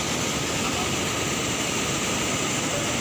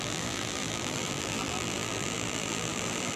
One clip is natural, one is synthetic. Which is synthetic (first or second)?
second